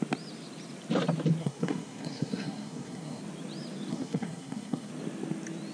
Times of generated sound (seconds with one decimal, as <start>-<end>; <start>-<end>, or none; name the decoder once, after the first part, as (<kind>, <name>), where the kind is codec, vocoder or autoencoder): 1.4-3.2 (codec, SNAC); 3.9-4.9